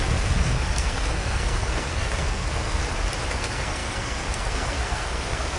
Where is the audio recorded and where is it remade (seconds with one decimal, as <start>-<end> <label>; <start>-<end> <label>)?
0.0-2.8 remade; 2.8-3.3 recorded; 3.3-5.6 remade